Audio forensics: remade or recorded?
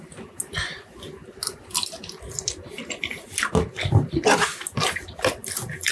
recorded